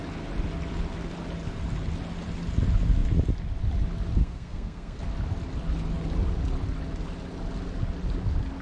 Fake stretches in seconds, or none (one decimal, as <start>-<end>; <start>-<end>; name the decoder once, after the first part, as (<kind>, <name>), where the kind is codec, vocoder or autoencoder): 4.2-5.0 (codec, SNAC)